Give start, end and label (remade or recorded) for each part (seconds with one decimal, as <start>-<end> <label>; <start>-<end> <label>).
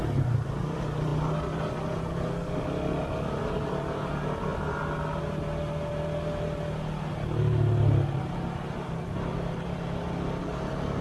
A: 0.0-11.0 recorded